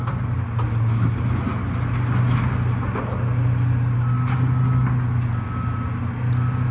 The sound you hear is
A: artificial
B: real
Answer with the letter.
B